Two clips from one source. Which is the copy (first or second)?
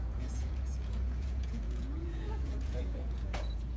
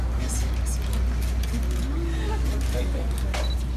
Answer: first